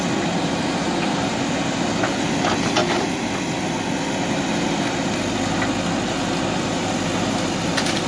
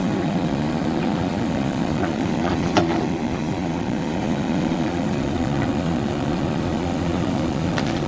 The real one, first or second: first